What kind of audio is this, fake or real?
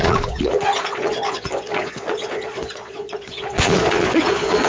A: fake